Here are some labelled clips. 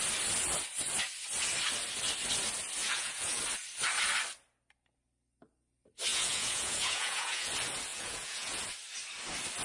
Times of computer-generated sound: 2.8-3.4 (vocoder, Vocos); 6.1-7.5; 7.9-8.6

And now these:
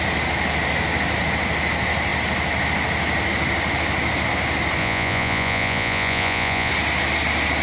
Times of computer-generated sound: 4.8-6.7 (vocoder, Vocos)

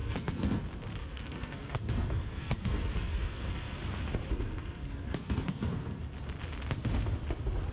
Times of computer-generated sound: 0.0-0.6 (codec, SNAC); 1.0-3.8; 4.3-6.0

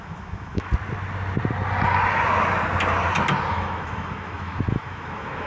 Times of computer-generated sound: 0.0-0.7 (autoencoder, DAC-VAE); 3.5-5.5

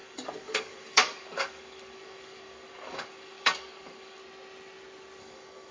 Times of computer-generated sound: 0.0-4.2 (codec, DAC); 5.2-5.7

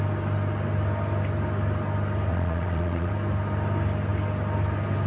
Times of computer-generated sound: 2.3-3.1 (vocoder, Vocos)

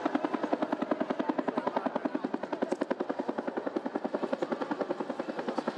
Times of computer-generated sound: none